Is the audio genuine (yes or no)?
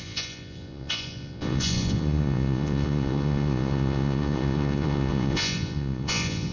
no